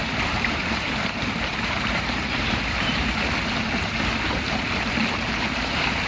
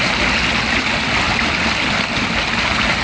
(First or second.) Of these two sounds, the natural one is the second